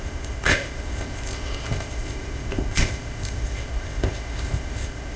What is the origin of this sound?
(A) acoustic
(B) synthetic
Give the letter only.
B